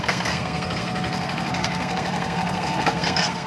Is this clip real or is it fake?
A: fake